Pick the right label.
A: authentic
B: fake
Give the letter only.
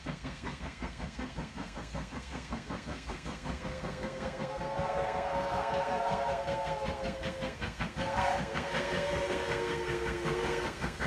B